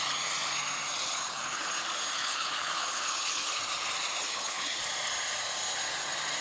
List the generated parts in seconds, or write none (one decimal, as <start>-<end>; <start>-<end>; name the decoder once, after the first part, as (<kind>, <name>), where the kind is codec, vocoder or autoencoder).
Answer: 1.0-1.7 (codec, HILCodec); 2.2-3.6; 4.2-4.8